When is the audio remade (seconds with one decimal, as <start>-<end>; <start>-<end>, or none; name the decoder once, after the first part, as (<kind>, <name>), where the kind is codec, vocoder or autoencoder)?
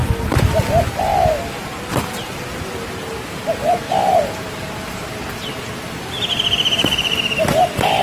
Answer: none